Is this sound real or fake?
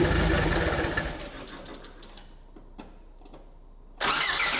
real